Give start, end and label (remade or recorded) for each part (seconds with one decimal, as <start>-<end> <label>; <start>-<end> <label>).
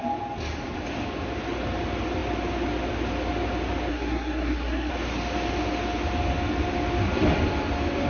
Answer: 0.0-3.9 recorded; 3.9-4.9 remade; 4.9-8.1 recorded